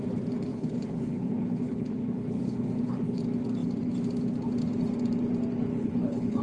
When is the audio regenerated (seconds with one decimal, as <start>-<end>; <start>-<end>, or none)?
0.5-3.2; 5.7-6.4